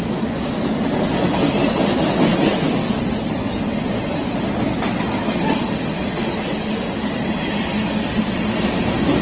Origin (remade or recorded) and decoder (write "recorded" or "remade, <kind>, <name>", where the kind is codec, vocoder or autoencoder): recorded